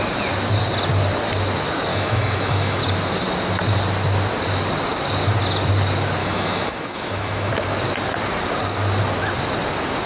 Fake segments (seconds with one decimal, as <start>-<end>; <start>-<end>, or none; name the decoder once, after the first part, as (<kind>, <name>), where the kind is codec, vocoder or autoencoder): 1.9-2.8 (autoencoder, DAC-VAE); 6.2-7.5